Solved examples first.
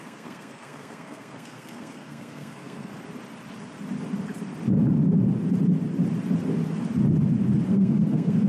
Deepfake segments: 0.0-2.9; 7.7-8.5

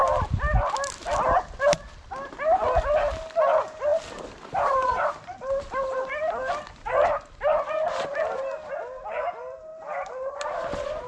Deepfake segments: none

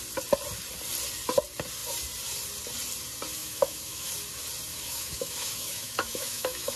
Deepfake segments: 3.4-4.1; 4.7-6.8

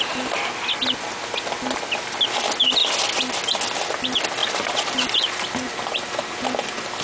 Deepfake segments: 4.4-5.9

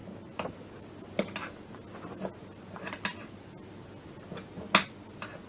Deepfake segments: none

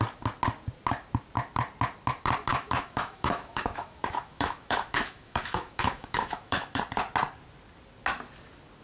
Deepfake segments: 2.5-6.8